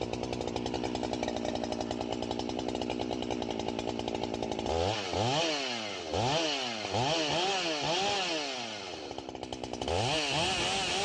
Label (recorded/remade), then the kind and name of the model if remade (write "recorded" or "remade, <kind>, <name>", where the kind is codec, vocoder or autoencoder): recorded